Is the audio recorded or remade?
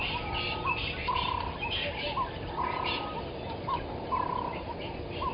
recorded